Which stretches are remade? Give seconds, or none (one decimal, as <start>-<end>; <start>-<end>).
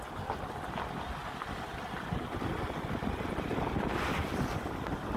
3.9-4.4